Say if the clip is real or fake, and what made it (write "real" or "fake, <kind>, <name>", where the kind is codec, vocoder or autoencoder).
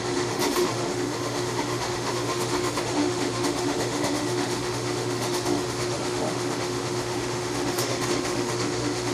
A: fake, autoencoder, DAC-VAE